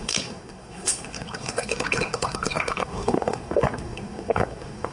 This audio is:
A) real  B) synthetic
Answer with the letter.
B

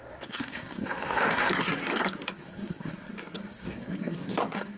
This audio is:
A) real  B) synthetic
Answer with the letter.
B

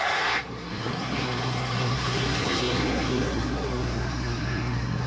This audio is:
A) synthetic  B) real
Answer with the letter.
A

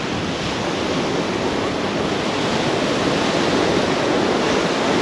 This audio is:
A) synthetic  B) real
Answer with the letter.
B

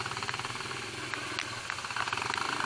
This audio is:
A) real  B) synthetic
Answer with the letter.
A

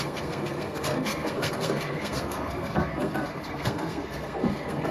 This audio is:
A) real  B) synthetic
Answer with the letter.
B